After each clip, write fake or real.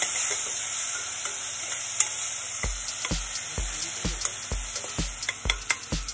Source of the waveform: real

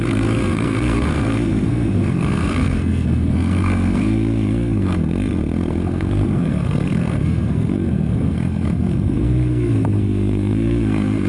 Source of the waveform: fake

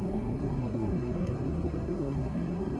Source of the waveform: fake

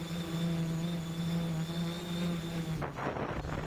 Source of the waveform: real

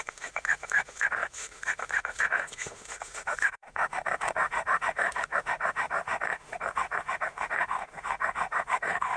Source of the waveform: fake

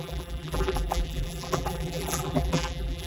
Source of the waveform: fake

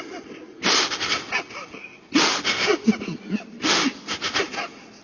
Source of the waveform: real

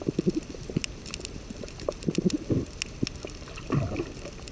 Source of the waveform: real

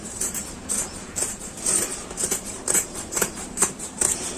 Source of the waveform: fake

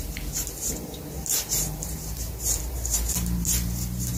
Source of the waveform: fake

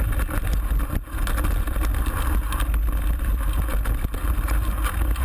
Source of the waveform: real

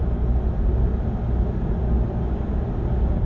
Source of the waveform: real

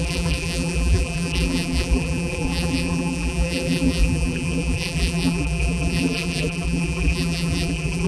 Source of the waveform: fake